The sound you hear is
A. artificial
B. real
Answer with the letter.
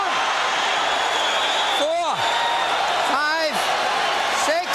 B